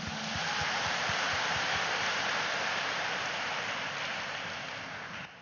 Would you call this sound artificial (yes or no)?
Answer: no